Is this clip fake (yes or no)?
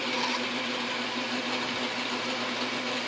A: no